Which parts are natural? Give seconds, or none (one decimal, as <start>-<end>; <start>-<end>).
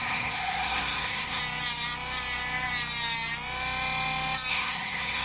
1.4-4.5